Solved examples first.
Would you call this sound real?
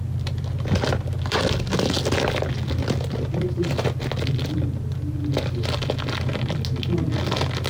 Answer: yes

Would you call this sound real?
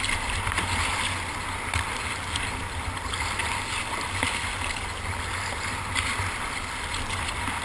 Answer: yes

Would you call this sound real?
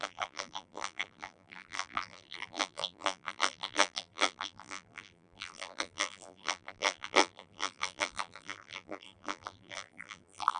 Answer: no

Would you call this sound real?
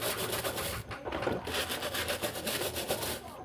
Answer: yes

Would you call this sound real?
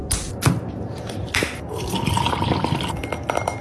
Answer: yes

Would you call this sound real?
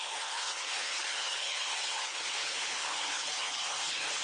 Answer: no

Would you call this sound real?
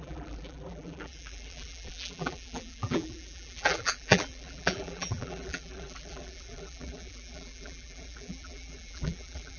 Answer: no